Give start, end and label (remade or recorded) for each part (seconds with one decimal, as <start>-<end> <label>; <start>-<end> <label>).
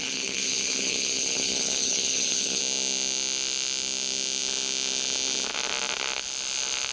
0.0-2.6 remade; 2.6-6.9 recorded